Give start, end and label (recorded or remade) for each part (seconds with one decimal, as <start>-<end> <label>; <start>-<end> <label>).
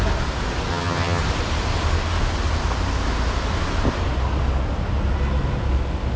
0.0-0.7 recorded; 0.7-1.2 remade; 1.2-6.2 recorded